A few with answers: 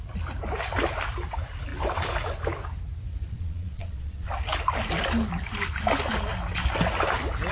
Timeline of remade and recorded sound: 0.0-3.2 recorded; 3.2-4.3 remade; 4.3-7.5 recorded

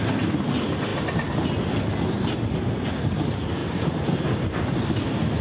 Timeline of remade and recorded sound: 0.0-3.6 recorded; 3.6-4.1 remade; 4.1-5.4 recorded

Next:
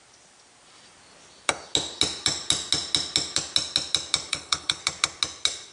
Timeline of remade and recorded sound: 0.0-4.3 recorded; 4.3-4.8 remade; 4.8-5.7 recorded

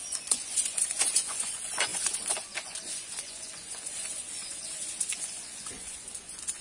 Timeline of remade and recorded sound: 0.0-6.6 remade

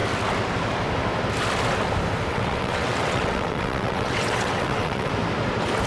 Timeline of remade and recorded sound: 0.0-2.3 recorded; 2.3-5.1 remade; 5.1-5.9 recorded

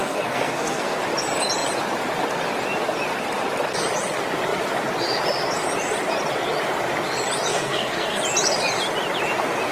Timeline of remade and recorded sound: 0.0-1.0 remade; 1.0-7.5 recorded; 7.5-8.2 remade; 8.2-9.7 recorded

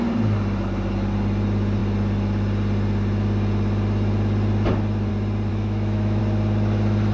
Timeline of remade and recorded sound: 0.0-5.5 recorded; 5.5-6.2 remade; 6.2-7.1 recorded

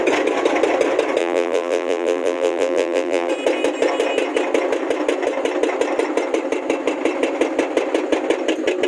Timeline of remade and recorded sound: 0.0-1.2 recorded; 1.2-3.3 remade; 3.3-8.9 recorded